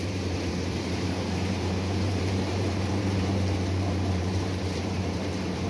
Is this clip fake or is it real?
fake